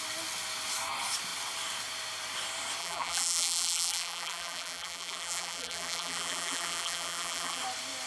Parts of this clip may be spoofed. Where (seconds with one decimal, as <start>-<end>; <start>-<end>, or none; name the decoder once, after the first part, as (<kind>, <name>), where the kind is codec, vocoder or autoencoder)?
2.8-7.6 (vocoder, BigVGAN v2)